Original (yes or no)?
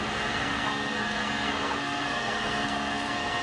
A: no